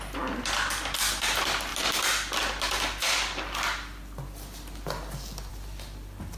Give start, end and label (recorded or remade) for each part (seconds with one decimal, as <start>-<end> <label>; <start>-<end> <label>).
0.0-6.4 recorded